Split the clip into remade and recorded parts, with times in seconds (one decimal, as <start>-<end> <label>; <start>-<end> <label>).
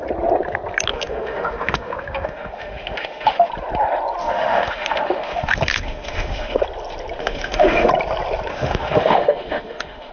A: 0.0-0.9 recorded; 0.9-3.5 remade; 3.5-4.2 recorded; 4.2-6.6 remade; 6.6-7.2 recorded; 7.2-7.9 remade; 7.9-8.5 recorded; 8.5-10.1 remade